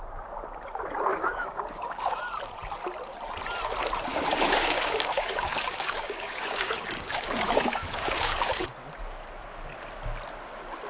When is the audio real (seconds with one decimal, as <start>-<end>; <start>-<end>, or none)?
0.0-1.1; 2.2-4.1; 8.7-10.9